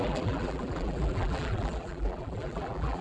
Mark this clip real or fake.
fake